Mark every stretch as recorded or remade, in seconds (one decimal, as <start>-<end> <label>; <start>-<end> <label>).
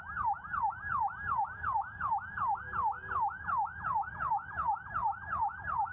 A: 0.0-5.9 recorded